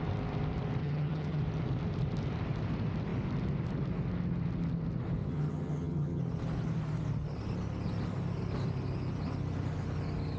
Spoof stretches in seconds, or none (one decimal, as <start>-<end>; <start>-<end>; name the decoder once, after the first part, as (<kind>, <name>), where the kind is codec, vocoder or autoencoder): 0.8-1.4 (vocoder, HiFi-GAN); 5.3-6.2